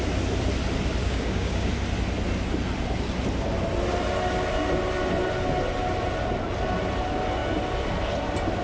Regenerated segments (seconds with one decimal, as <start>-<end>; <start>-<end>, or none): 1.0-1.7